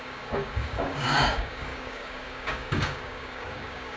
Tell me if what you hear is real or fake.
fake